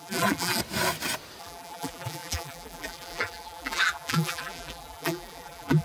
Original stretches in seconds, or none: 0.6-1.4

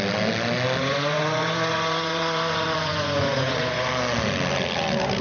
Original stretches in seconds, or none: 0.0-0.8; 3.9-5.2

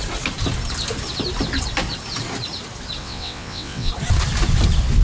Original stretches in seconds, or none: 0.0-3.0; 3.9-5.0